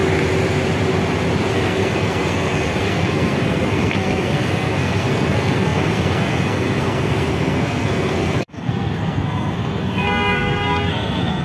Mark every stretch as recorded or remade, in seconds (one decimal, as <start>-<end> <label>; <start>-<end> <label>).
0.0-1.5 recorded; 1.5-11.4 remade